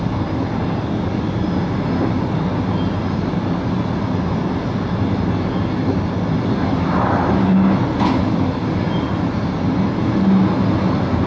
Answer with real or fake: real